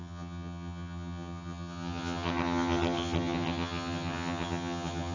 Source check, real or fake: fake